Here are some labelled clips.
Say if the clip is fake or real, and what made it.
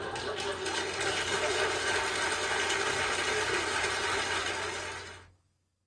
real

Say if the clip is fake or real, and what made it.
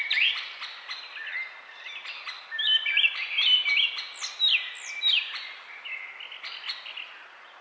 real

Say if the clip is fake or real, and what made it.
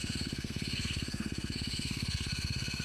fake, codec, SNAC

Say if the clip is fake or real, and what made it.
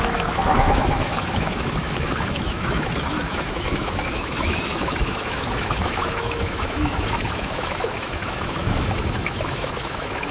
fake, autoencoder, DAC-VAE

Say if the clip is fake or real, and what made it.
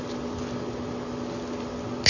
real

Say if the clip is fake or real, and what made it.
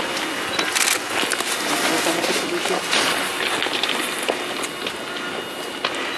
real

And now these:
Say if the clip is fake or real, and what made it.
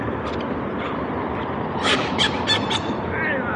real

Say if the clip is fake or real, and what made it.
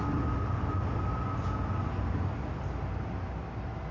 real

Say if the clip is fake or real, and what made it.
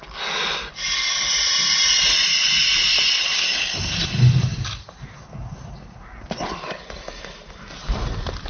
real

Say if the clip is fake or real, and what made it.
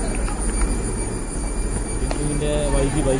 real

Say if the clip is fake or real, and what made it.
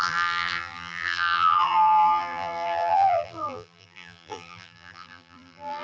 fake, vocoder, BigVGAN v2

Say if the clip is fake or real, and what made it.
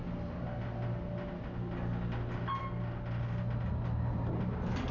real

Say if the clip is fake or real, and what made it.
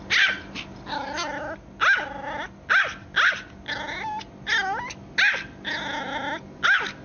real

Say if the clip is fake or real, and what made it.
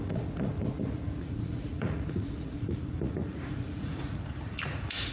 fake, vocoder, Vocos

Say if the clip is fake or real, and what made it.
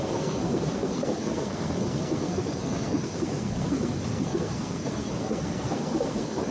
fake, codec, SNAC